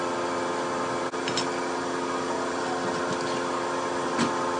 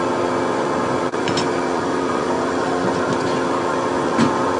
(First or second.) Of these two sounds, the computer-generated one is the second